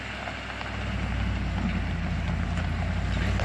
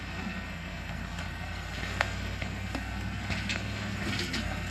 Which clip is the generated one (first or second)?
second